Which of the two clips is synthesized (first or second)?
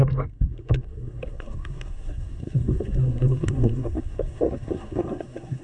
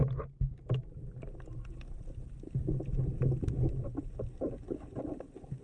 first